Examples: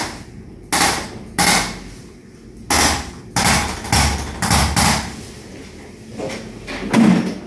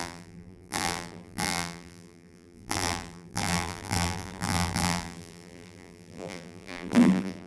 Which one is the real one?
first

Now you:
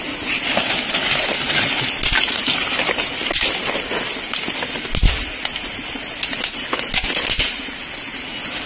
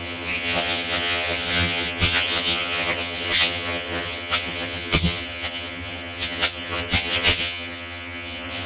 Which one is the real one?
first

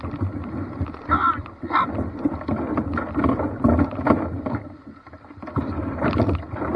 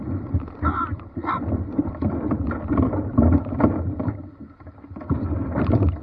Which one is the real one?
first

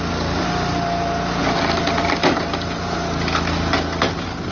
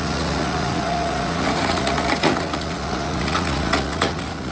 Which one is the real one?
first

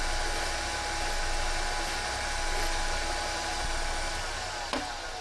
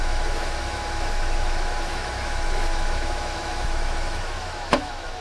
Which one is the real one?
first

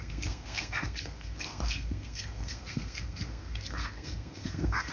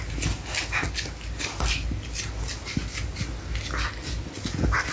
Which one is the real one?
second